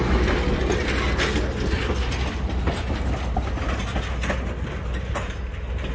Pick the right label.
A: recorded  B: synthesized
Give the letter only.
A